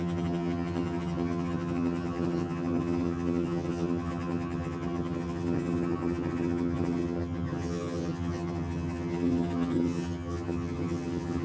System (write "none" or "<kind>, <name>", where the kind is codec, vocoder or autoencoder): vocoder, HiFi-GAN